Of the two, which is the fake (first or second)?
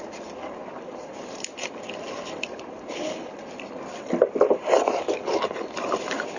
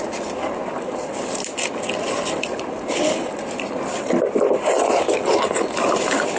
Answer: first